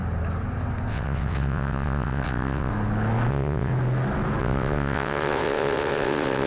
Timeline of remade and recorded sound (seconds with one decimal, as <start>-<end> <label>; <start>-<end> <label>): 0.0-0.9 recorded; 0.9-2.7 remade; 2.7-3.3 recorded; 3.3-3.7 remade; 3.7-4.4 recorded; 4.4-6.5 remade